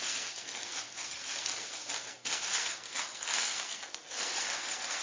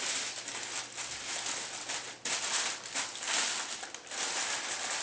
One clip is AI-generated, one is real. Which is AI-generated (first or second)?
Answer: first